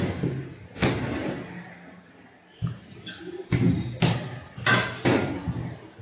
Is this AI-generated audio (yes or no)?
no